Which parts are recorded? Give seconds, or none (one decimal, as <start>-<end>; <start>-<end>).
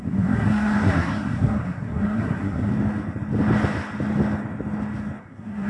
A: 2.7-5.2